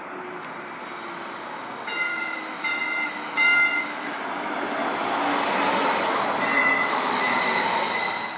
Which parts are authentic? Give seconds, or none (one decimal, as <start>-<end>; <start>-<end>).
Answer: 0.0-2.1; 4.2-6.6; 7.3-8.4